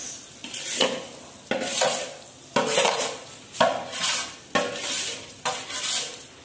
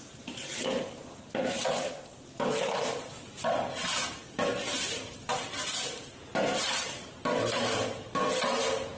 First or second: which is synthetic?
second